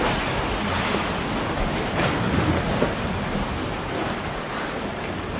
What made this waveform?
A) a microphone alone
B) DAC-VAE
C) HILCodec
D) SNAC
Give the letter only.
A